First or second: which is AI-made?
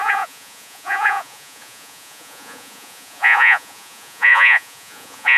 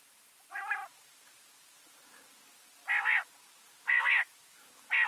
first